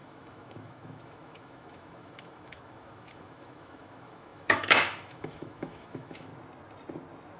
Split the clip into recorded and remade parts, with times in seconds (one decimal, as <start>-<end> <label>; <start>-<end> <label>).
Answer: 0.0-6.3 remade; 6.3-7.4 recorded